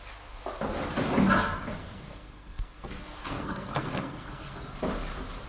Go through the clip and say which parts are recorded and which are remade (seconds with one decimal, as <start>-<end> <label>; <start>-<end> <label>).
0.0-1.8 recorded; 1.8-4.6 remade; 4.6-5.5 recorded